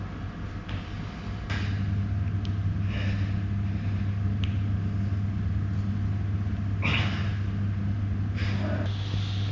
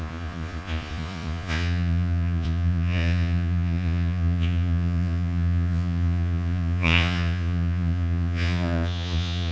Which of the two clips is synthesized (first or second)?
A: second